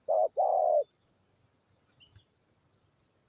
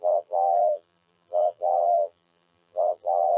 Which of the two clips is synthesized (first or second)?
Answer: second